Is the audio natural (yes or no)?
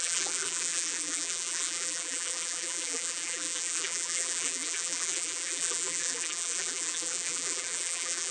no